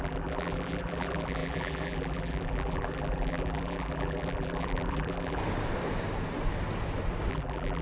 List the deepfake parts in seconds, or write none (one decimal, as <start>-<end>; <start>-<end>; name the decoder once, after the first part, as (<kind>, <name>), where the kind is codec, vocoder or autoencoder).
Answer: 0.0-5.4 (vocoder, BigVGAN v2); 7.3-7.8